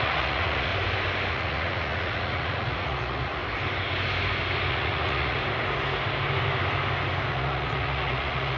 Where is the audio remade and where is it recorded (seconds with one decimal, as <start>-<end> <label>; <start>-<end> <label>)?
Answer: 0.0-0.7 remade; 0.7-1.3 recorded; 1.3-3.4 remade; 3.4-4.7 recorded; 4.7-5.4 remade; 5.4-7.3 recorded; 7.3-8.6 remade